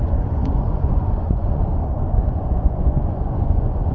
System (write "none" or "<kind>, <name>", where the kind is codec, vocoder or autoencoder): vocoder, Vocos